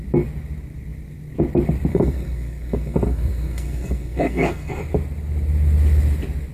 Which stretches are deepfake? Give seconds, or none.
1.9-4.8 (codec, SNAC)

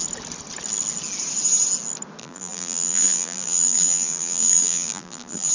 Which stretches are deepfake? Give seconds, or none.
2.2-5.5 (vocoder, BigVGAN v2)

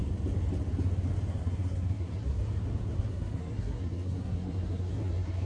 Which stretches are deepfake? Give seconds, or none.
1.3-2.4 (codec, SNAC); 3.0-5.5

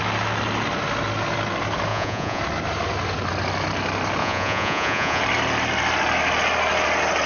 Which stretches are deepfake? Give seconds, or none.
1.9-2.4 (vocoder, Vocos); 4.2-5.2